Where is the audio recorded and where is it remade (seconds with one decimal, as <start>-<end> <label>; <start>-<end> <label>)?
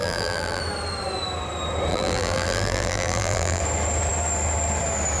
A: 0.0-0.6 remade; 0.6-1.9 recorded; 1.9-3.6 remade; 3.6-5.2 recorded